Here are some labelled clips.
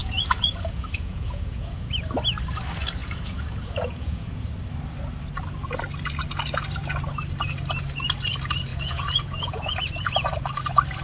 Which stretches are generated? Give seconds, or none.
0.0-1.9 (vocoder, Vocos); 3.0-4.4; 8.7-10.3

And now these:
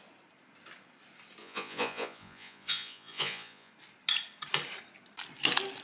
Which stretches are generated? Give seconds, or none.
1.4-3.7 (vocoder, Vocos)

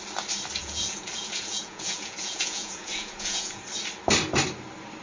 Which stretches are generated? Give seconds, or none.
0.6-3.6 (vocoder, Vocos)